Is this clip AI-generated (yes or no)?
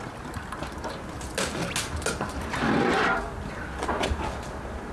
no